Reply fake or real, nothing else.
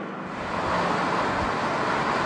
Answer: real